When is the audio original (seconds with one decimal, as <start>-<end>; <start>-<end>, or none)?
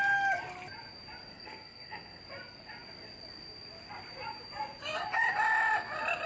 0.0-1.3; 2.2-6.3